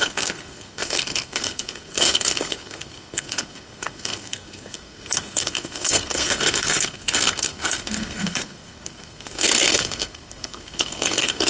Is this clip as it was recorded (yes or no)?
no